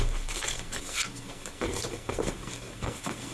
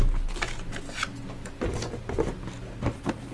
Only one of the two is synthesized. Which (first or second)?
first